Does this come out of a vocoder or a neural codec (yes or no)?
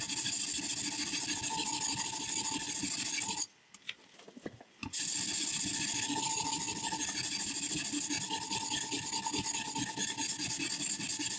no